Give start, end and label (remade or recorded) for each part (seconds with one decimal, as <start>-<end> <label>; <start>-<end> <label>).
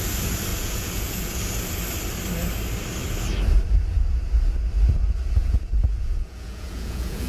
0.0-0.5 recorded; 0.5-1.4 remade; 1.4-5.4 recorded; 5.4-7.3 remade